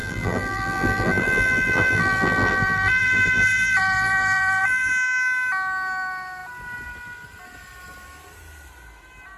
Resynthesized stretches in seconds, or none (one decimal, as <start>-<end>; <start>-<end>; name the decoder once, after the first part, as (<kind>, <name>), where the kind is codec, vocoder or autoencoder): 0.0-4.9 (vocoder, BigVGAN v2)